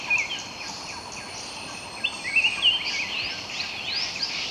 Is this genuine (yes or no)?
yes